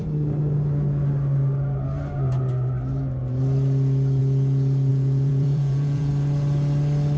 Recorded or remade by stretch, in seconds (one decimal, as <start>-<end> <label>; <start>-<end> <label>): 0.0-4.9 recorded; 4.9-6.1 remade; 6.1-7.2 recorded